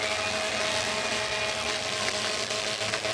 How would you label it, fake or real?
real